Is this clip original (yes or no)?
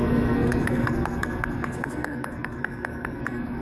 no